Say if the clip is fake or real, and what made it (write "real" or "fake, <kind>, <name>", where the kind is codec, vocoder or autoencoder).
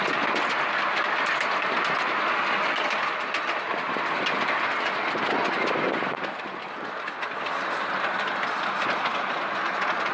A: real